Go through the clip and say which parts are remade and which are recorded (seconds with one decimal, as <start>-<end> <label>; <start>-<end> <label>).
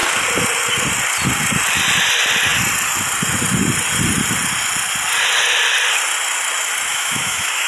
0.0-6.9 recorded; 6.9-7.7 remade